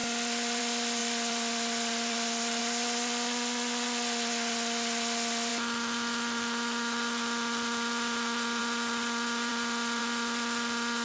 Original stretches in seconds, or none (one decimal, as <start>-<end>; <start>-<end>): 0.6-1.0; 2.6-11.0